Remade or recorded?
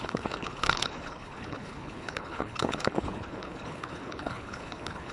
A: remade